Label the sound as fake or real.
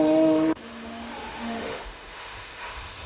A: fake